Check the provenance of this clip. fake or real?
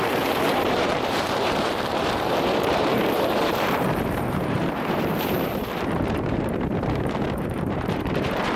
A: fake